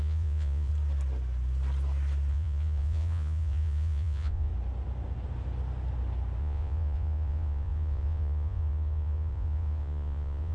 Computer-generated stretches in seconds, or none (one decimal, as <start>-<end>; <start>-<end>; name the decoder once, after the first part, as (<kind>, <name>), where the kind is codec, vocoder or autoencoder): 0.0-0.7 (vocoder, Vocos); 2.3-4.5; 6.4-10.5